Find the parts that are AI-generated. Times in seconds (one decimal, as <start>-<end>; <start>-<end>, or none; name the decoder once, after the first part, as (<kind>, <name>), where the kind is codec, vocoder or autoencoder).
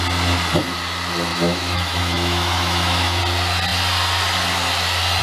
1.3-3.2 (autoencoder, DAC-VAE)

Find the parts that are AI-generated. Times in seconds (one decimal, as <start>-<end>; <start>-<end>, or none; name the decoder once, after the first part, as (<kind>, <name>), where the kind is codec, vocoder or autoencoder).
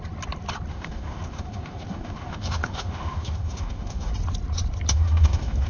0.7-4.1 (autoencoder, DAC-VAE); 4.9-5.7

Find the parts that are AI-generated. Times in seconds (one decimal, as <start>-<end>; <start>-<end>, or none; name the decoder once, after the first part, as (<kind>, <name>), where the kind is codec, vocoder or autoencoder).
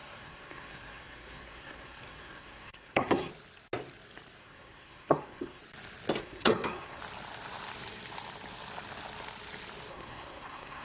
0.0-3.3 (codec, SNAC); 4.4-5.6; 6.2-7.0; 9.9-10.8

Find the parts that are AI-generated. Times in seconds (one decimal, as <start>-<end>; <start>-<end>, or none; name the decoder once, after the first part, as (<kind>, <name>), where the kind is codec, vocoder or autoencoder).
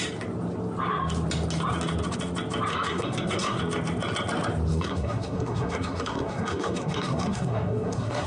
2.7-3.6 (codec, SNAC); 4.7-8.3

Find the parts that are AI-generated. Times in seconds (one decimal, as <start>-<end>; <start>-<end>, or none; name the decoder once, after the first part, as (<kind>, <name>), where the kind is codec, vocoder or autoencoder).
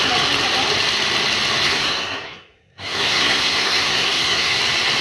1.6-4.6 (codec, SNAC)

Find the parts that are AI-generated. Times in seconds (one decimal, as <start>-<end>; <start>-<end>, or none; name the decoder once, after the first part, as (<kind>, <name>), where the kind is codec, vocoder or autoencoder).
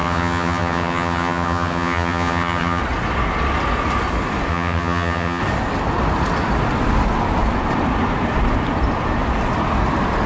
0.0-2.8 (vocoder, HiFi-GAN); 4.5-5.4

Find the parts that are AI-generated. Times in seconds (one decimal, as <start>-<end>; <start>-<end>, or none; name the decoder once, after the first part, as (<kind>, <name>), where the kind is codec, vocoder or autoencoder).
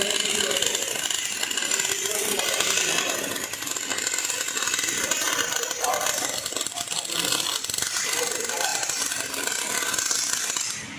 none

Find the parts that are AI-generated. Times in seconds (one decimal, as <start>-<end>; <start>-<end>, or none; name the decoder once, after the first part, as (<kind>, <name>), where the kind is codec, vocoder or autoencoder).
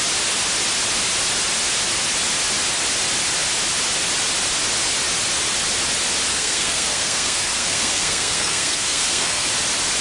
6.3-9.5 (codec, SNAC)